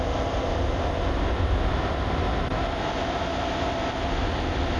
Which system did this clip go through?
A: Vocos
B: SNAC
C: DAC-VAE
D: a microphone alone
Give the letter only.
D